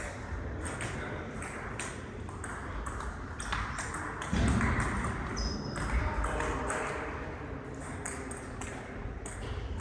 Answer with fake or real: real